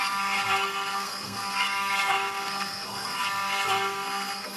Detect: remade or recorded remade